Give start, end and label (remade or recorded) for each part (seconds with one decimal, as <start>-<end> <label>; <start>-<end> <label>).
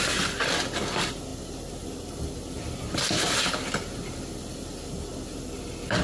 0.0-6.0 recorded